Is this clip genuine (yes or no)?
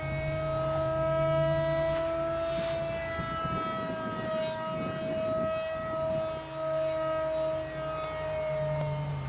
yes